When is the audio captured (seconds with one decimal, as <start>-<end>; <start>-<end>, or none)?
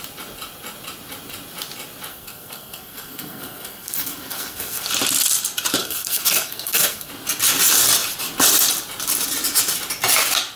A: 0.0-2.1; 4.9-5.8; 7.1-10.6